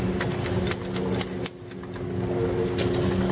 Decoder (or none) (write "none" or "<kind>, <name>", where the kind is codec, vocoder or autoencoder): none